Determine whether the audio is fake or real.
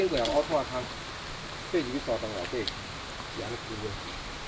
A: real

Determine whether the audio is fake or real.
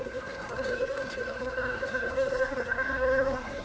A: fake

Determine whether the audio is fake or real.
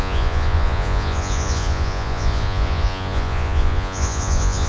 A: fake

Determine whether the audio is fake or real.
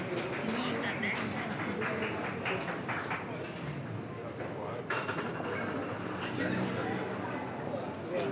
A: real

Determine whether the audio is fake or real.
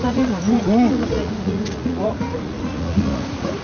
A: fake